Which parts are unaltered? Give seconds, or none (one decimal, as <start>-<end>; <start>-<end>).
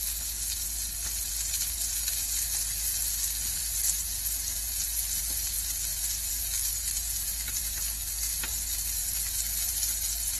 0.0-10.4